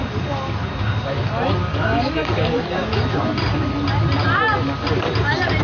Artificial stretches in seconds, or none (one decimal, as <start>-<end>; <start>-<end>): 1.6-3.0